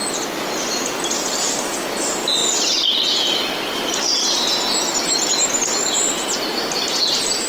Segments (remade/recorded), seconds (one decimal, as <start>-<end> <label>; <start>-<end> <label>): 0.0-7.5 recorded

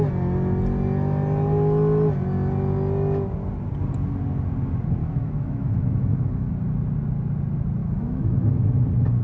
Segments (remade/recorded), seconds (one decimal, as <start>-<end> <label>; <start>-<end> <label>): 0.0-5.0 recorded; 5.0-6.5 remade; 6.5-7.8 recorded; 7.8-8.5 remade; 8.5-9.2 recorded

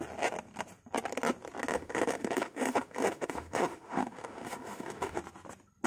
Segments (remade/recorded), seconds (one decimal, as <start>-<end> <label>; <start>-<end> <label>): 0.0-1.7 recorded; 1.7-5.2 remade; 5.2-5.9 recorded

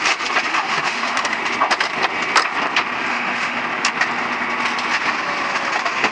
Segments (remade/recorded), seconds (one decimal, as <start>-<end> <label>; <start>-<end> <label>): 0.0-0.5 recorded; 0.5-1.4 remade; 1.4-3.1 recorded; 3.1-3.6 remade; 3.6-6.1 recorded

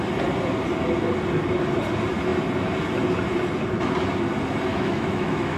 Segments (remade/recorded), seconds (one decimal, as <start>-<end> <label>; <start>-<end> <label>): 0.0-4.7 recorded; 4.7-5.6 remade

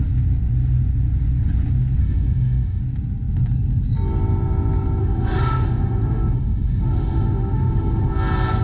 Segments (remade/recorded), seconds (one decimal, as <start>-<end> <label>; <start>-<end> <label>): 0.0-2.0 recorded; 2.0-2.8 remade; 2.8-5.0 recorded; 5.0-8.1 remade; 8.1-8.6 recorded

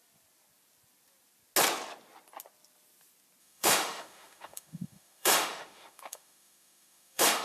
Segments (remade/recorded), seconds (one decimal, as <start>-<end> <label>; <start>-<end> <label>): 0.0-3.4 recorded; 3.4-7.4 remade

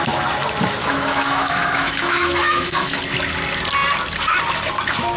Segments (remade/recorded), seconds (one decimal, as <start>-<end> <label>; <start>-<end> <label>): 0.0-0.8 recorded; 0.8-3.0 remade; 3.0-5.2 recorded